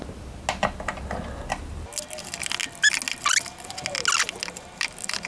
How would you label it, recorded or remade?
recorded